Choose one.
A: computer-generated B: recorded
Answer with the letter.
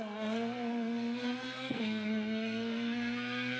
A